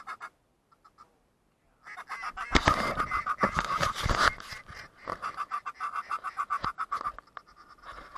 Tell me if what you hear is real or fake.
real